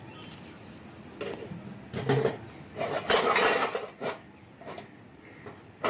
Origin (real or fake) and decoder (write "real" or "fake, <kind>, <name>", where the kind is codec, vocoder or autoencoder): real